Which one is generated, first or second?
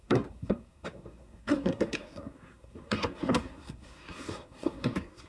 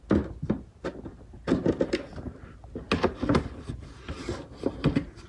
first